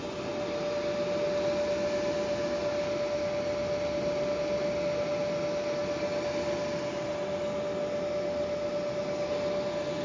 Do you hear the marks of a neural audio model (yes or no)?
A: no